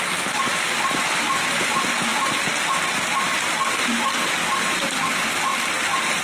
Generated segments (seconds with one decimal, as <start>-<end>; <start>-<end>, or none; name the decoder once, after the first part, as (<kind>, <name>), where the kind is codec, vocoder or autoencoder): none